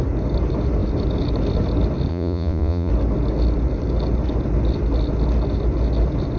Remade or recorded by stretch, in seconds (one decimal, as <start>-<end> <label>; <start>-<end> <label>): 0.0-2.1 recorded; 2.1-2.9 remade; 2.9-6.4 recorded